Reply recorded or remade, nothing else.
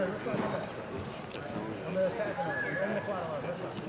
recorded